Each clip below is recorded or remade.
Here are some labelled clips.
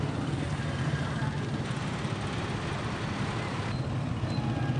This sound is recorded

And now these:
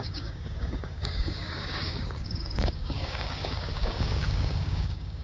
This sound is remade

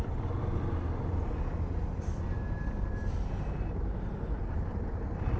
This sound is recorded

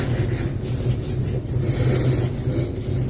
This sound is recorded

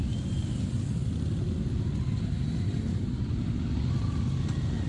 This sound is recorded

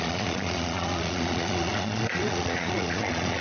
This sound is remade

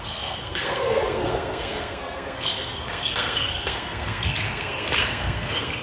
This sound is remade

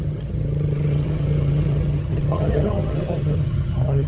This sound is remade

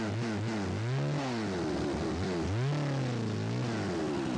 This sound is recorded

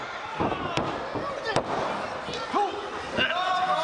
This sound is recorded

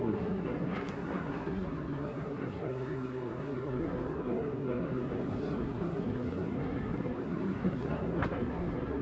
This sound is remade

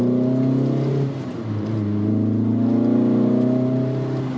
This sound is recorded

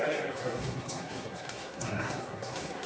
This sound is remade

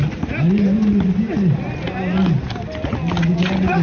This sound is recorded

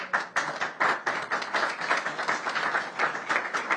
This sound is recorded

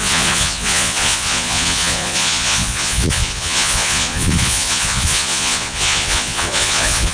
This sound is remade